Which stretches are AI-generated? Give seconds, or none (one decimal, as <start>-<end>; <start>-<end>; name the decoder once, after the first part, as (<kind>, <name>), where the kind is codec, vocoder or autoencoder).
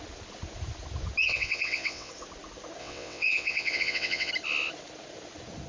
1.2-2.1 (vocoder, WaveNeXt); 2.8-4.3